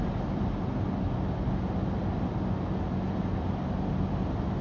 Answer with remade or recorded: recorded